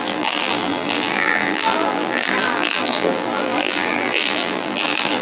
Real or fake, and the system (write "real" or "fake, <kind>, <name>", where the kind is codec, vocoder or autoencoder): fake, vocoder, BigVGAN v2